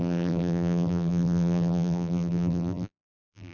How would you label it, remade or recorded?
remade